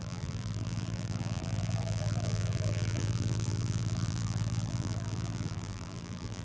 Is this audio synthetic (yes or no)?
yes